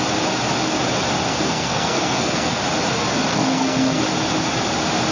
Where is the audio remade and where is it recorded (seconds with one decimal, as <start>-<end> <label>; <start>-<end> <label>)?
0.0-1.3 recorded; 1.3-2.6 remade; 2.6-3.3 recorded; 3.3-4.0 remade; 4.0-5.1 recorded